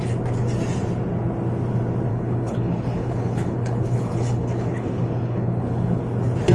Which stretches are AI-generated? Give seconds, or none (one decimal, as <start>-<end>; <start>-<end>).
2.1-6.0